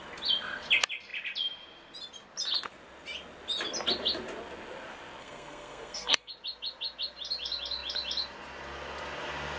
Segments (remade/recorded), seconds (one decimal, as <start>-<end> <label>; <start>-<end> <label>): 0.0-5.2 recorded; 5.2-6.3 remade; 6.3-9.6 recorded